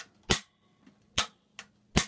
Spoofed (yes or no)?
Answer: no